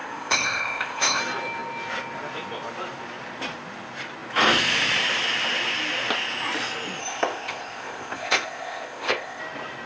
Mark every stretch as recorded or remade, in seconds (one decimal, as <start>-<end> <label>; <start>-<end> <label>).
0.0-1.2 remade; 1.2-7.0 recorded; 7.0-9.4 remade; 9.4-9.9 recorded